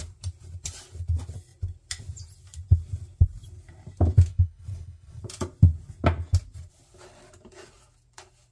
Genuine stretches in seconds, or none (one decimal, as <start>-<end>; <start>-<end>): 0.0-4.3; 5.2-8.5